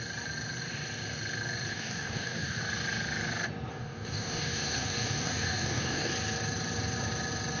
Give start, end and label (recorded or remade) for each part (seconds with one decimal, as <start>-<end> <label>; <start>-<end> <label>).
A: 0.0-1.7 recorded; 1.7-2.6 remade; 2.6-3.7 recorded; 3.7-6.1 remade; 6.1-7.6 recorded